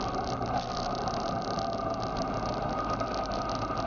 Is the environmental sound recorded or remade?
recorded